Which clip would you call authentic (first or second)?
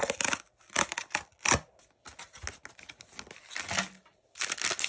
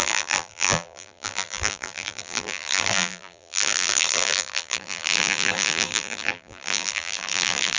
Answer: first